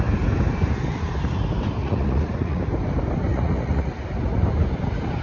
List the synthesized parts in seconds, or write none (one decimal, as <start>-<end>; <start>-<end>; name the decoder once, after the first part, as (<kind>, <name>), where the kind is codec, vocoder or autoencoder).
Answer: 1.8-2.6 (vocoder, Vocos); 3.3-3.9